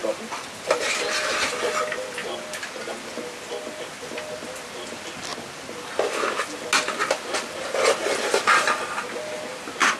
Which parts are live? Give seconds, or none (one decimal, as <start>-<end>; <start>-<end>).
0.0-10.0

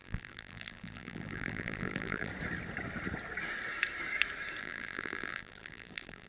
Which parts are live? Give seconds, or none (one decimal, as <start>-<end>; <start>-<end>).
2.3-4.6

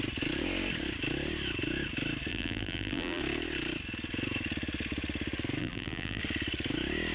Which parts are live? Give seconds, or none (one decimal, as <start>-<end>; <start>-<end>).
0.0-2.3; 3.2-5.6; 6.2-7.1

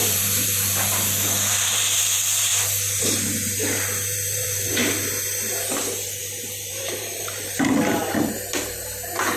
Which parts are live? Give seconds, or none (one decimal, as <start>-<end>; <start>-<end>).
2.5-3.0; 4.8-6.2

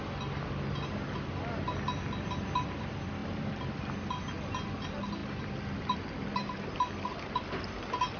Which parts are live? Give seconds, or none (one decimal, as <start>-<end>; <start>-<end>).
0.0-3.2; 3.8-5.2

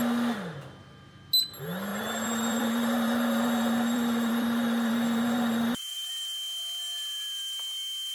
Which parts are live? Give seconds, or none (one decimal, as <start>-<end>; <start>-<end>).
0.0-1.9; 6.1-8.1